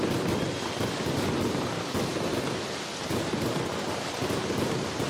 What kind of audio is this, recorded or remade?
recorded